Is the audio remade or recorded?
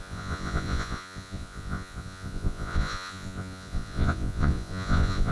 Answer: remade